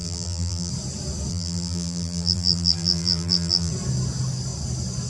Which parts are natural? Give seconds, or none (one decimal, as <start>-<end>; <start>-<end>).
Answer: 0.7-1.3; 3.7-5.1